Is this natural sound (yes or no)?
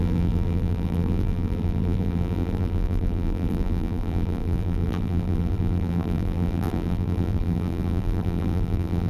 no